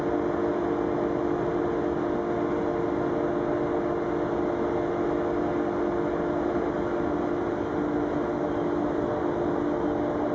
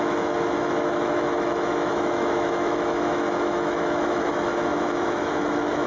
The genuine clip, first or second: first